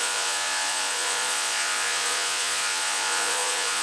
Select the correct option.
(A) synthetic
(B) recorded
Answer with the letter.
A